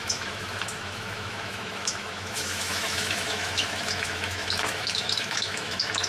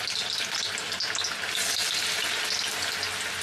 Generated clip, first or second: first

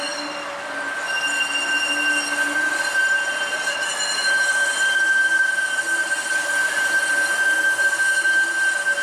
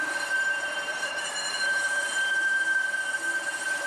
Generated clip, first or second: second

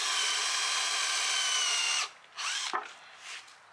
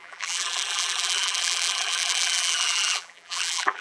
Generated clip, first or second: second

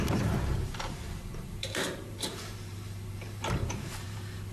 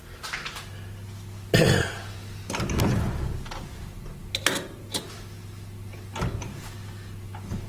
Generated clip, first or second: first